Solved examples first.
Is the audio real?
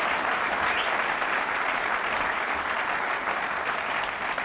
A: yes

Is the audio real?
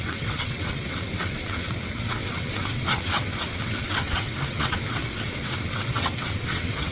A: no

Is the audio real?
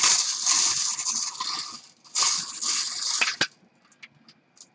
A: yes